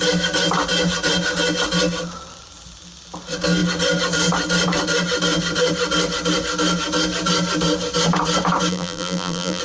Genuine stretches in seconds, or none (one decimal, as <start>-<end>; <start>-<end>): 0.0-8.7